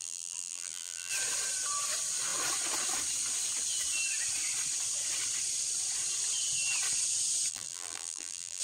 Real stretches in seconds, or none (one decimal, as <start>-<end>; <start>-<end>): 1.1-7.5